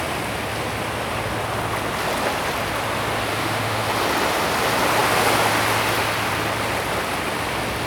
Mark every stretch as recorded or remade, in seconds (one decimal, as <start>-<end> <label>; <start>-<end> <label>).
0.0-3.3 recorded; 3.3-3.9 remade; 3.9-7.9 recorded